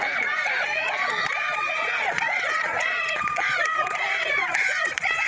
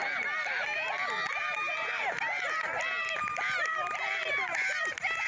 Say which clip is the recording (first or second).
second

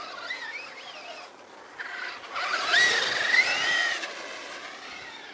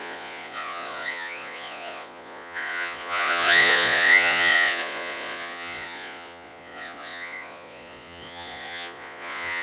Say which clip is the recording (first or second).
first